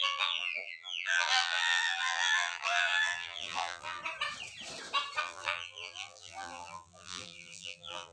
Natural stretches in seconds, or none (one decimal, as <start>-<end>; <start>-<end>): 4.0-5.2